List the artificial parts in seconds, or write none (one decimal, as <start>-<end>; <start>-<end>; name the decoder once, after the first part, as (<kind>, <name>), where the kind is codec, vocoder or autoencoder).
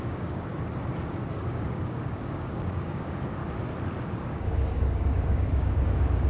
0.0-0.5 (codec, DAC); 1.3-3.4; 4.0-6.3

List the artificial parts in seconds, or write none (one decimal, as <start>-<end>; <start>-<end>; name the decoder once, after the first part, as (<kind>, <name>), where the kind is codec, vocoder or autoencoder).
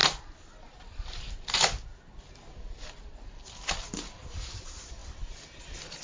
none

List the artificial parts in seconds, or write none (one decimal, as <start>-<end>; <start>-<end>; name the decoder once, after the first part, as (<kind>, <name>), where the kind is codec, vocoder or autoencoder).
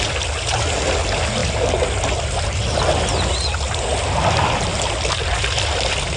none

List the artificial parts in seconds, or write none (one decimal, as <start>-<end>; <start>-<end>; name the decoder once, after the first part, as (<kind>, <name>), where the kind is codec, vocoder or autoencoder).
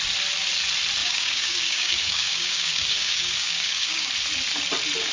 1.0-4.1 (codec, DAC)